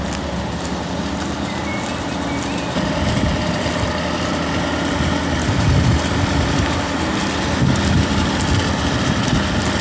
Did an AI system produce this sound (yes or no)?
no